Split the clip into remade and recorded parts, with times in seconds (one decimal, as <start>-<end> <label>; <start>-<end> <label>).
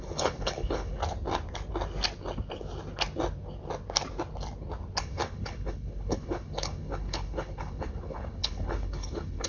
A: 0.0-1.0 remade; 1.0-5.0 recorded; 5.0-9.5 remade